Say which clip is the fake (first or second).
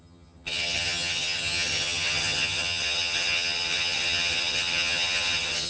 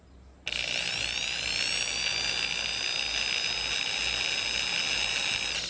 first